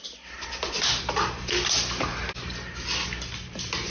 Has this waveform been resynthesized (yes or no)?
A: no